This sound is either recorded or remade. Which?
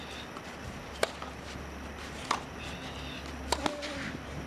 recorded